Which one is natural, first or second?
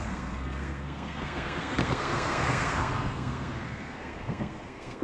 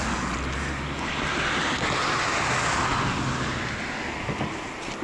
second